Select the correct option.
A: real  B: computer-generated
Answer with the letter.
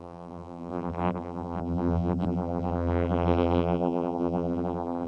B